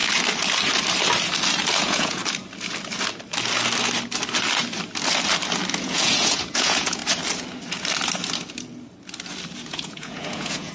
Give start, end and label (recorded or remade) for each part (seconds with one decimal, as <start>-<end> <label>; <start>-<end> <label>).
0.0-1.8 recorded; 1.8-2.2 remade; 2.2-5.8 recorded; 5.8-7.0 remade; 7.0-9.7 recorded; 9.7-10.7 remade